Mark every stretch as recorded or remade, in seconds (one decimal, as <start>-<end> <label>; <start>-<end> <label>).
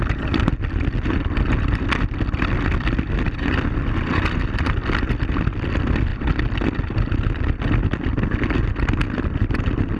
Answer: 0.0-10.0 recorded